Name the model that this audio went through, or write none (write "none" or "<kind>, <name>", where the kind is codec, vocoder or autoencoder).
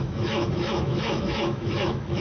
autoencoder, DAC-VAE